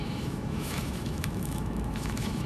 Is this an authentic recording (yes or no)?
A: no